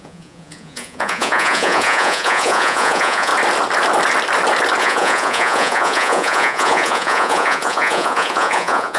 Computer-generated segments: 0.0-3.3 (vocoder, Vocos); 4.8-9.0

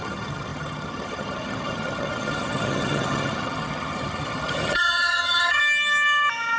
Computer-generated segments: 0.0-5.6 (vocoder, HiFi-GAN)

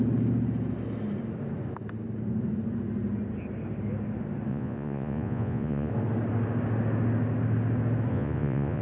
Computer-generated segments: 4.5-5.9 (vocoder, Vocos); 8.1-8.8

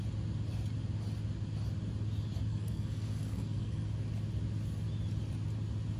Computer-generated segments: 2.5-3.9 (codec, SNAC)

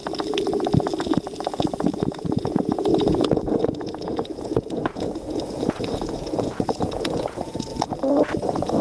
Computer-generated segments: 2.0-7.7 (vocoder, Vocos); 8.2-8.8